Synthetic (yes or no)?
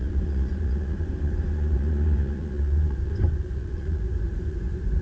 yes